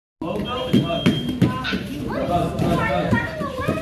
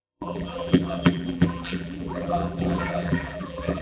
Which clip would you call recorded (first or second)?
first